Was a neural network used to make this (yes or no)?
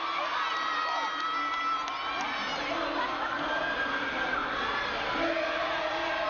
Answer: no